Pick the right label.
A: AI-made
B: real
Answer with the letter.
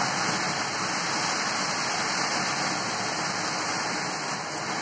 B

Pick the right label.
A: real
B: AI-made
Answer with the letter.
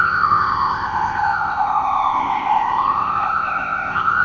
B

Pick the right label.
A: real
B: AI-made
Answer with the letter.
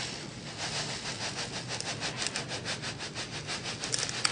A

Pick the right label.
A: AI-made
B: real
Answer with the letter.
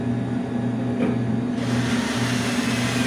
B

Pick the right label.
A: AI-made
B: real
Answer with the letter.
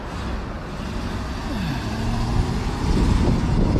B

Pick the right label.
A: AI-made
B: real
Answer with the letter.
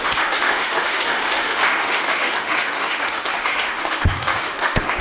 A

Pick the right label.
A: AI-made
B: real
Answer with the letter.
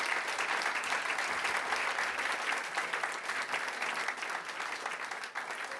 B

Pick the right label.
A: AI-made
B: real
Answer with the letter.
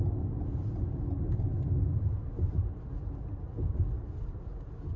B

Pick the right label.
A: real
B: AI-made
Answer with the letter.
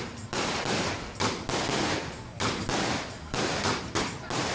A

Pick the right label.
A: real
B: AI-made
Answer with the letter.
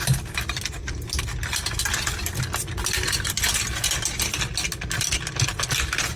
A